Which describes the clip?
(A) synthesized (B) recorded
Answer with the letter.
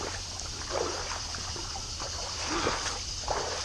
B